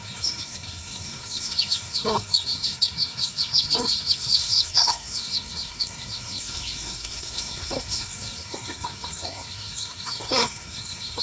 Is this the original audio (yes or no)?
no